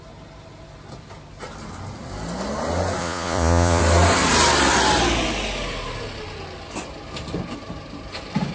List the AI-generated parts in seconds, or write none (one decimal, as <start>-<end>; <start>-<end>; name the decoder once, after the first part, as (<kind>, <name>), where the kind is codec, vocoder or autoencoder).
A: 3.0-3.8 (vocoder, Vocos)